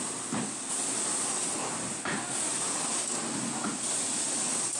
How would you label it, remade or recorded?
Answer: recorded